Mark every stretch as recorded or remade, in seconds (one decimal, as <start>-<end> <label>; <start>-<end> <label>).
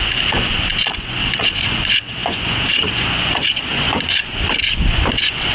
0.0-5.5 remade